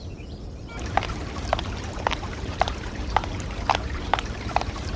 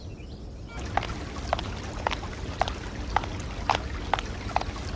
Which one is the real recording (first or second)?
second